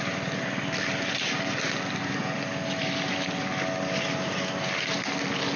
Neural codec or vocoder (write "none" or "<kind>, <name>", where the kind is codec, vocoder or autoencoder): none